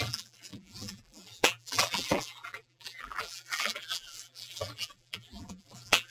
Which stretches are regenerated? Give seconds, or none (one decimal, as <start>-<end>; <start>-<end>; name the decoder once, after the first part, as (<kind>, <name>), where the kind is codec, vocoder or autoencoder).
0.0-6.1 (vocoder, BigVGAN v2)